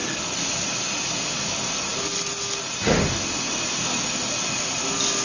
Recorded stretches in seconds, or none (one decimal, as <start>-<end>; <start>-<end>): 0.0-5.2